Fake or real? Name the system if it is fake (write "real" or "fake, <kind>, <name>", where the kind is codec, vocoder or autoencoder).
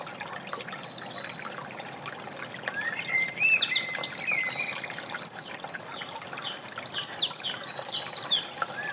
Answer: real